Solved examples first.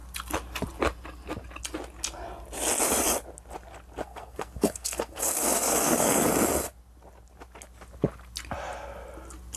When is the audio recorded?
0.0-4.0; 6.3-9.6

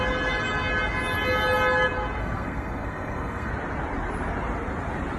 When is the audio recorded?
0.0-2.2; 3.5-5.2